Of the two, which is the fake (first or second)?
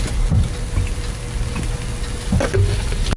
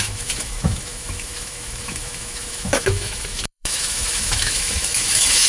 second